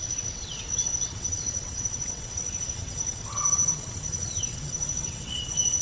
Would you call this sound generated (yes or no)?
yes